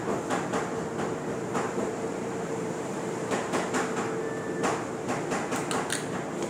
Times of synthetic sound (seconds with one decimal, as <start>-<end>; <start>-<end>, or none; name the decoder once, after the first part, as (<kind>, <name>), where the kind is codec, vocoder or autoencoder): 1.5-3.7 (vocoder, BigVGAN v2)